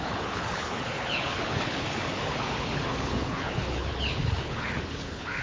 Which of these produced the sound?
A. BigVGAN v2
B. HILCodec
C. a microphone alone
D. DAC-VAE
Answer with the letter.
B